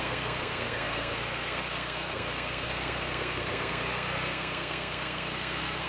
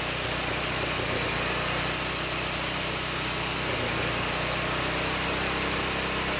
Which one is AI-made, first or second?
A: first